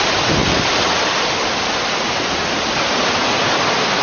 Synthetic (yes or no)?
no